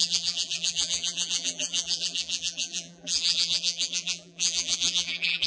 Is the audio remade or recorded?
remade